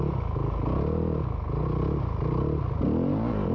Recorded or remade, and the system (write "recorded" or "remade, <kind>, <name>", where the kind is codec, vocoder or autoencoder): recorded